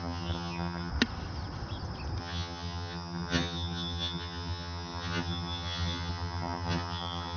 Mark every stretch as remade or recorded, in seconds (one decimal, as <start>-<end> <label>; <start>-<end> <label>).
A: 0.0-0.9 remade; 0.9-2.2 recorded; 2.2-7.4 remade